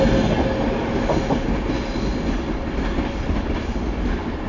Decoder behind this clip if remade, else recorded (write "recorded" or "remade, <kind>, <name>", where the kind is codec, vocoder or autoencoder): recorded